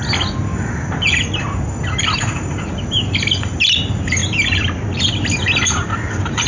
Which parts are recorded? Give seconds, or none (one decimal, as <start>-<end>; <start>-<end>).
0.0-6.5